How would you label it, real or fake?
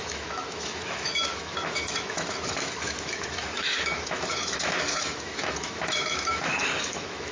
fake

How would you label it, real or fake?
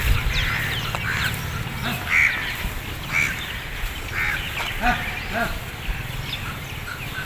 real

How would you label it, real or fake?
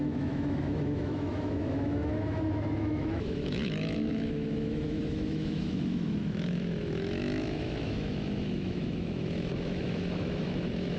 fake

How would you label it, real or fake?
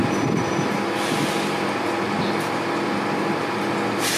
real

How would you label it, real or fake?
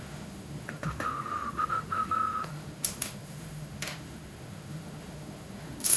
fake